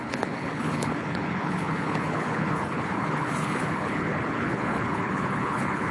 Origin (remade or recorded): remade